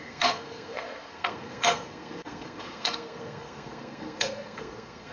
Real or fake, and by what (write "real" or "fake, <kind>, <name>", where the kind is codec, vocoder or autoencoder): fake, codec, SNAC